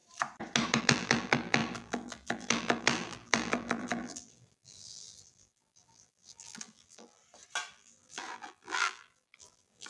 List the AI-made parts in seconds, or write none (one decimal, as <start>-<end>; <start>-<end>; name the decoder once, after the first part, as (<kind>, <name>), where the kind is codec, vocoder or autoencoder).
0.8-7.2 (vocoder, BigVGAN v2); 7.7-9.9